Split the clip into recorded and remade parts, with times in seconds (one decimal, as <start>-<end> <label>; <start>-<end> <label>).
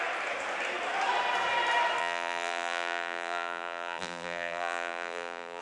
0.0-2.0 recorded; 2.0-5.6 remade